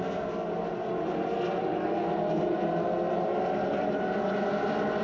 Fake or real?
real